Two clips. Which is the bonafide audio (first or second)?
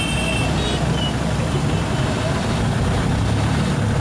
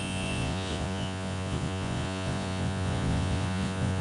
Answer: first